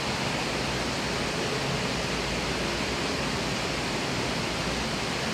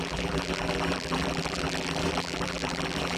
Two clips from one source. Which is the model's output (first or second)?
second